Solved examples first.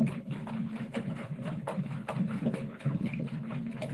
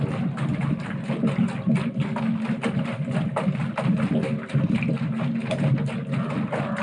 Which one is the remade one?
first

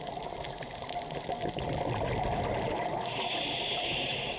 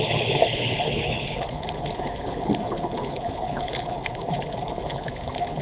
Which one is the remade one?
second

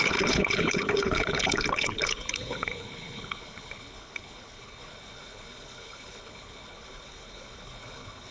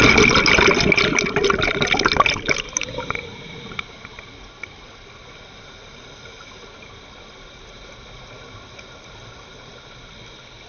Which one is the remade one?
first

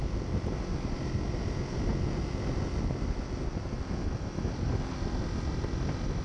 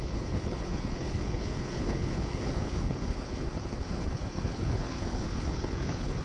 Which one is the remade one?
second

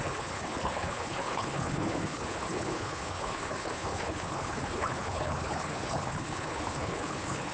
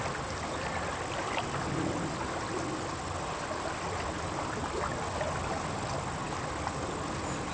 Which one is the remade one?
first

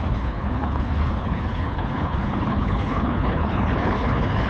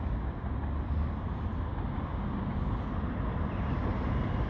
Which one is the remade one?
first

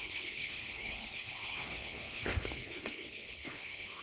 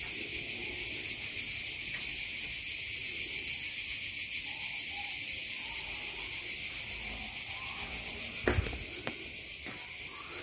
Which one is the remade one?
first